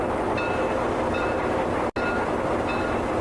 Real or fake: real